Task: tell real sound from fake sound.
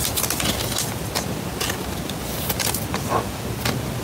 real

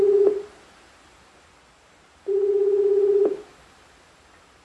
real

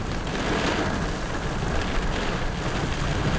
real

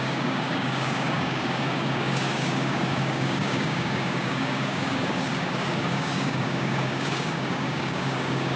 fake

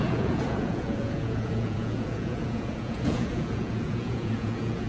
fake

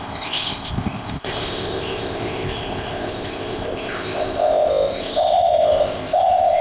fake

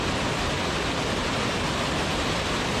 real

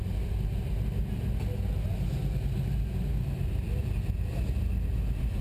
real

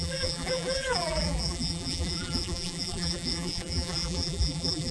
fake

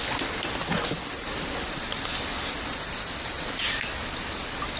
real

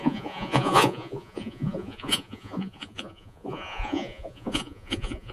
fake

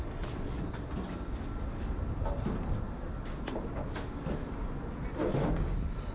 real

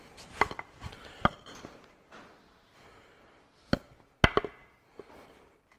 real